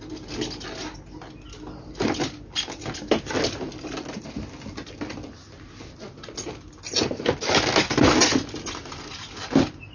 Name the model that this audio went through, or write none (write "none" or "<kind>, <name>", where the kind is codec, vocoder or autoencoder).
none